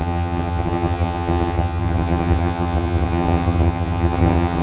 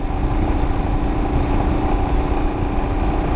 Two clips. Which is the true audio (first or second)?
second